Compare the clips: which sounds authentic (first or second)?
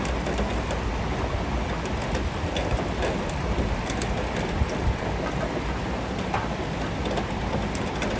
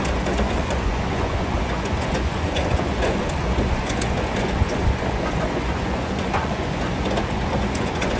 first